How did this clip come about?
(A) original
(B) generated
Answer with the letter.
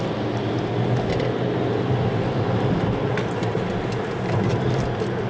A